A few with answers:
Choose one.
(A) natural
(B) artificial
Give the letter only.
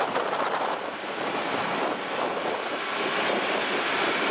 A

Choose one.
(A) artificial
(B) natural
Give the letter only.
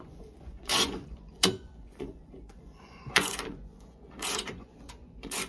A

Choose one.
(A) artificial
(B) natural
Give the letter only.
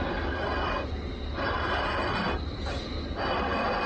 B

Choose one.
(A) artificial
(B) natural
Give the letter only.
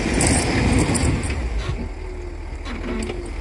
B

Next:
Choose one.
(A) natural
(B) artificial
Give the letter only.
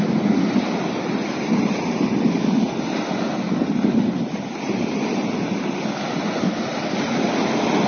A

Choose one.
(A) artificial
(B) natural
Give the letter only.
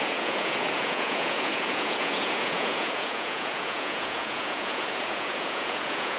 A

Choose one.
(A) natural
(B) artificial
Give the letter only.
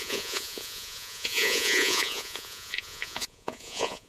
B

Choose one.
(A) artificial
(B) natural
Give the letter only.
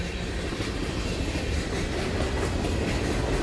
B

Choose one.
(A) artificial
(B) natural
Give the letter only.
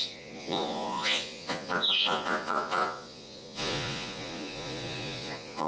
A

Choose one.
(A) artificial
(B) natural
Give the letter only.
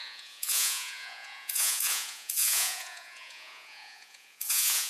A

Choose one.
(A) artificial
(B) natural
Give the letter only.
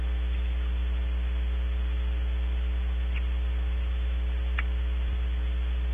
B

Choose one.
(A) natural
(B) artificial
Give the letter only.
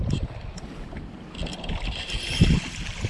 A